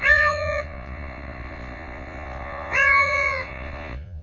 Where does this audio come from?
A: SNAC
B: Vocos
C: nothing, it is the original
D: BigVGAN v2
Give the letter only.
B